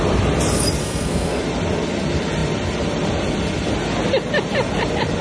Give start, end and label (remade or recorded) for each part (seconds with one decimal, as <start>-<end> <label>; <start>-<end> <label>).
0.0-0.8 recorded; 0.8-1.4 remade; 1.4-5.2 recorded